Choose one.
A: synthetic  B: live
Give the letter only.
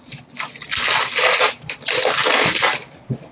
B